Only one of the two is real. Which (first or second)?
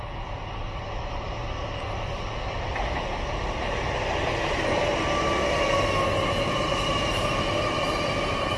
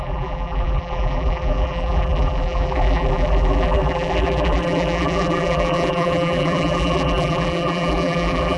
first